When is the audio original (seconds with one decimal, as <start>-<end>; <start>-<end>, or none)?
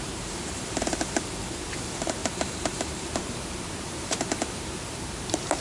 none